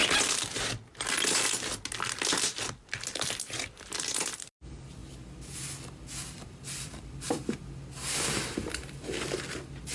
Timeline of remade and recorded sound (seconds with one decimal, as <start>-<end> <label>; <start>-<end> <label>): 0.0-2.7 recorded; 2.7-9.9 remade